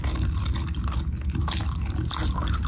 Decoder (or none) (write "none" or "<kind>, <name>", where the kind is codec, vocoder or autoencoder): none